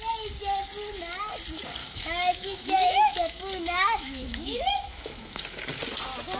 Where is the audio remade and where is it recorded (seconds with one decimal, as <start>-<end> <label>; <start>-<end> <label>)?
0.0-1.8 recorded; 1.8-5.4 remade; 5.4-6.4 recorded

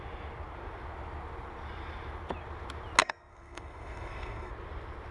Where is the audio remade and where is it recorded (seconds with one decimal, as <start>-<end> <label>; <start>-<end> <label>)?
0.0-3.0 recorded; 3.0-4.5 remade; 4.5-5.1 recorded

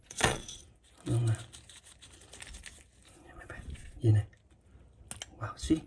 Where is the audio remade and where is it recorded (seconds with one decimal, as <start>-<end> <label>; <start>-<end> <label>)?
0.0-0.6 remade; 0.6-3.1 recorded; 3.1-4.1 remade; 4.1-5.5 recorded; 5.5-5.9 remade

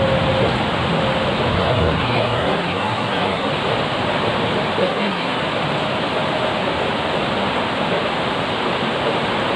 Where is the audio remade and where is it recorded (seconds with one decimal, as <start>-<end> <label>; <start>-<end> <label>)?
0.0-1.5 recorded; 1.5-3.5 remade; 3.5-4.8 recorded; 4.8-5.4 remade; 5.4-9.6 recorded